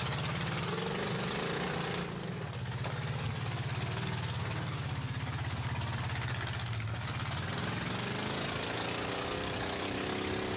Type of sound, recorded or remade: recorded